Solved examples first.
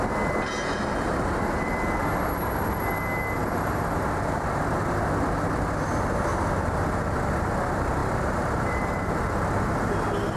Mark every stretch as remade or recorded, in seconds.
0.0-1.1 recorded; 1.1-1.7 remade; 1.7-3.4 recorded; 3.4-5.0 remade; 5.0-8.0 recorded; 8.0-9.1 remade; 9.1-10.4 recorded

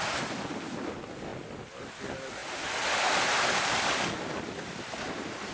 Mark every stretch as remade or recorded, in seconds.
0.0-5.5 recorded

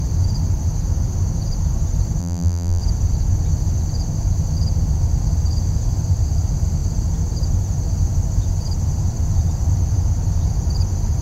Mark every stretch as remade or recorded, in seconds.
0.0-2.2 recorded; 2.2-2.8 remade; 2.8-11.2 recorded

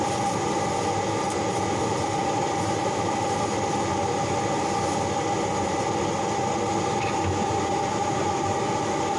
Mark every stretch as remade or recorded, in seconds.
0.0-2.2 recorded; 2.2-3.2 remade; 3.2-9.2 recorded